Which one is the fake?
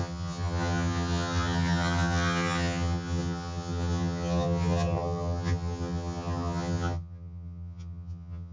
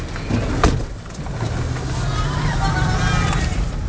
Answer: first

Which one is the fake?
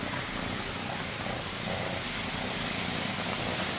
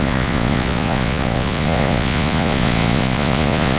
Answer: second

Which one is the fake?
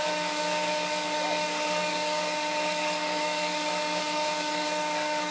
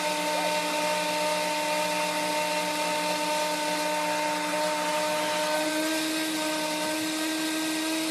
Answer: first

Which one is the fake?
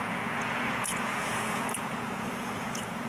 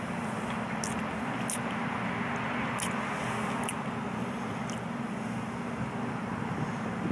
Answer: first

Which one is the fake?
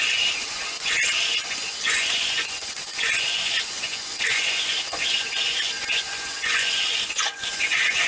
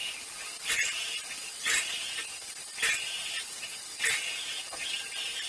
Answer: first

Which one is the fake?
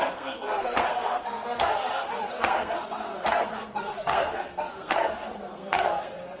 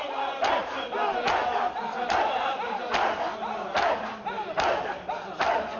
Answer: first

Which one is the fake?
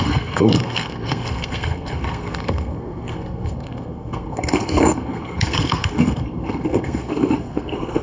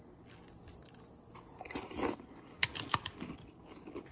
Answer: first